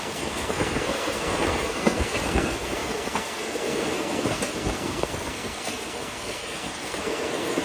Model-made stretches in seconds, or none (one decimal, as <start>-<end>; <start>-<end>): 0.0-7.6